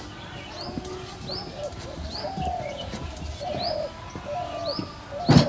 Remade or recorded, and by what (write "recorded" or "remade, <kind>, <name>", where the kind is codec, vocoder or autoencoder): recorded